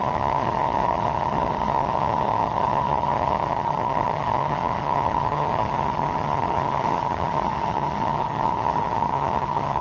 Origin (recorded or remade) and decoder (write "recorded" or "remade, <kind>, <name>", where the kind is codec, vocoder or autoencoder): remade, vocoder, HiFi-GAN